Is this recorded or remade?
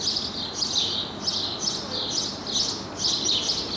recorded